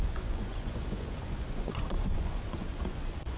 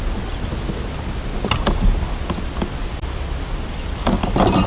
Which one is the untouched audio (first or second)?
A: second